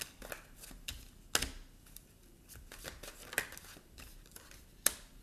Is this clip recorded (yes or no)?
yes